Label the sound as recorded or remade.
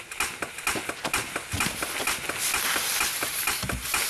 recorded